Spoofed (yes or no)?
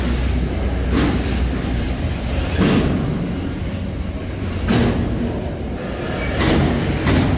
no